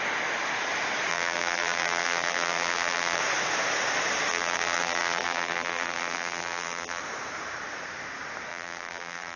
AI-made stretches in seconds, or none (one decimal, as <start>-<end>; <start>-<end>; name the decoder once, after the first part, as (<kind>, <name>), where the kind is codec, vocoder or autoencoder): 1.1-3.2 (vocoder, BigVGAN v2); 4.3-7.0; 8.5-9.4